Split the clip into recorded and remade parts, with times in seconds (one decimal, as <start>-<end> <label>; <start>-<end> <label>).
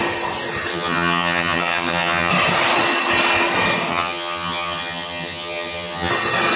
0.0-0.7 recorded; 0.7-2.3 remade; 2.3-3.9 recorded; 3.9-6.1 remade; 6.1-6.6 recorded